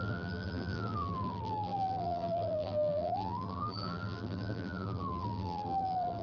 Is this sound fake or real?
fake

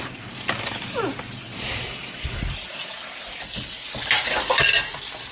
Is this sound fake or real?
real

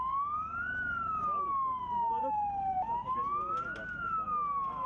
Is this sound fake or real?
real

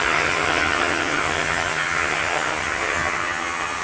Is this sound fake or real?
fake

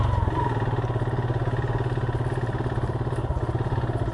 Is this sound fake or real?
real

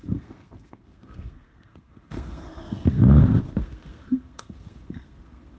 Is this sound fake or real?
fake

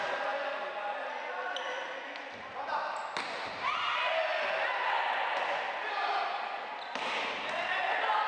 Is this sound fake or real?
real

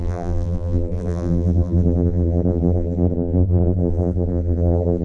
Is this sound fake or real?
fake